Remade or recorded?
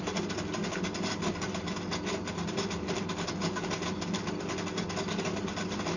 recorded